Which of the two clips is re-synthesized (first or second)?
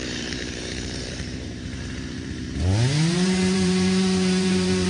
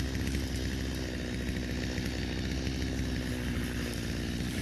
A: first